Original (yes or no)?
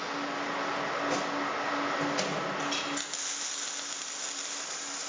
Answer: yes